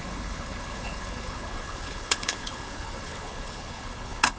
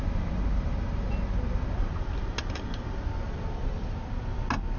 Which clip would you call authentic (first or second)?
second